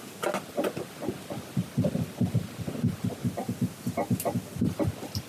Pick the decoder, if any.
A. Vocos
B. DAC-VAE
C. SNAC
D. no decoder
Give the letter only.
D